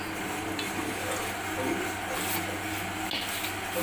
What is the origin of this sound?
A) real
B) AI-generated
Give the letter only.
A